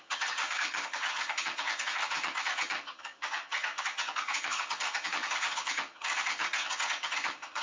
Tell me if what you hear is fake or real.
fake